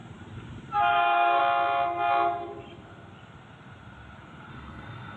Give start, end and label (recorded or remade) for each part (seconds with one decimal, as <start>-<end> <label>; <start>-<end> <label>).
0.0-0.9 recorded; 0.9-1.4 remade; 1.4-4.5 recorded; 4.5-5.2 remade